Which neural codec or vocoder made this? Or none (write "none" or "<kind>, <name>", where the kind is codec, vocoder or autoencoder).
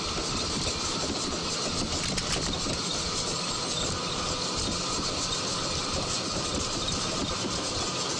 vocoder, BigVGAN v2